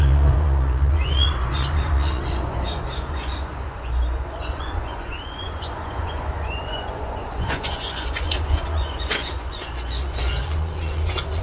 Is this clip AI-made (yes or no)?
yes